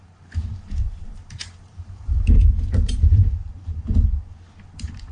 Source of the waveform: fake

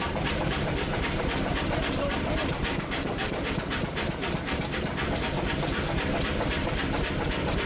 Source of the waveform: fake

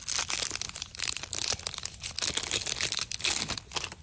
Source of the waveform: real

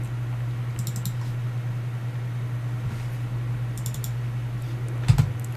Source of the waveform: real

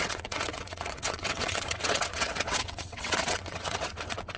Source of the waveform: fake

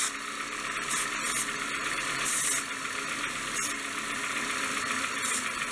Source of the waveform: real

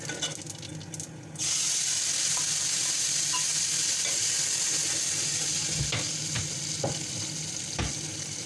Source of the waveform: real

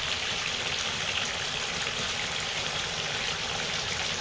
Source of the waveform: fake